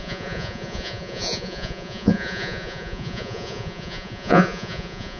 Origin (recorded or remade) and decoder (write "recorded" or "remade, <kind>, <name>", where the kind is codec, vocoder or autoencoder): remade, vocoder, Vocos